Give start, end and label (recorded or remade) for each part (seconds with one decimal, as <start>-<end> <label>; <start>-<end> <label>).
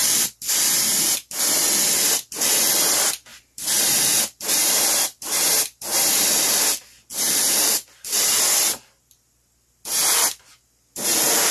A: 0.0-1.7 remade; 1.7-3.3 recorded; 3.3-6.6 remade; 6.6-7.1 recorded; 7.1-9.0 remade; 9.0-11.5 recorded